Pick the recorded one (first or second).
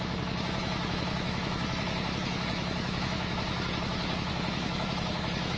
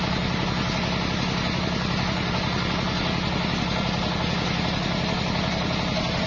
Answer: second